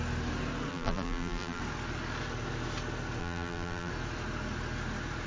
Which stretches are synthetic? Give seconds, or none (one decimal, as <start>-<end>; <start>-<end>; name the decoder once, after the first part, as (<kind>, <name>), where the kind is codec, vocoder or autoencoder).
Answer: 0.7-1.6 (vocoder, BigVGAN v2); 3.2-3.9